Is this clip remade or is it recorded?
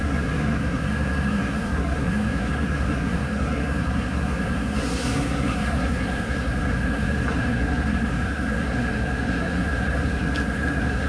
remade